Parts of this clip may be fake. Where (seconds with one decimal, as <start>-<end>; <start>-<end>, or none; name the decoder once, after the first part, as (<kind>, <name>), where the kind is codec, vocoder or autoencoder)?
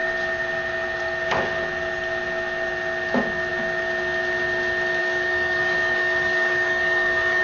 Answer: 5.0-7.4 (codec, DAC)